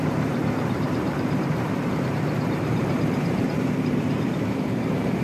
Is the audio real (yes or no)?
no